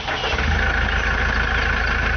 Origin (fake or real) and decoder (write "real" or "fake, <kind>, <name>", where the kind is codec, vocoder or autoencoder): real